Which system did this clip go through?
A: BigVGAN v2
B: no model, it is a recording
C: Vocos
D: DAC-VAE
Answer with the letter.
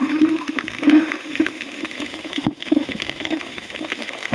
D